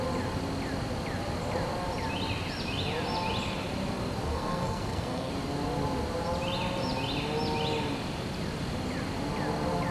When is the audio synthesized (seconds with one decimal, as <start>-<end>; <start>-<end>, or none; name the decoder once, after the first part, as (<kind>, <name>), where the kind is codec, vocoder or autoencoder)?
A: 4.3-5.3 (codec, SNAC)